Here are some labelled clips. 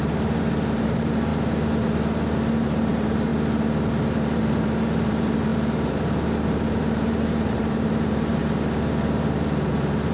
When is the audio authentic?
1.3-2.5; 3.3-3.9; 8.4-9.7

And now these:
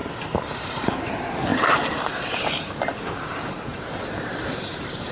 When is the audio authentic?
0.0-0.5

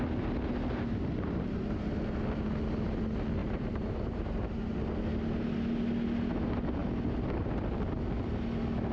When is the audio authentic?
0.0-3.4; 4.7-8.9

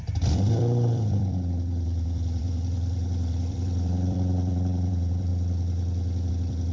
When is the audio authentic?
5.3-6.3

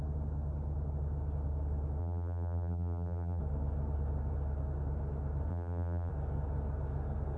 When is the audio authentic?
0.0-2.0; 3.4-5.5; 6.1-7.4

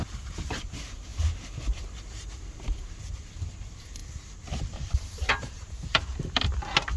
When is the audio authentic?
4.0-4.6; 6.1-7.0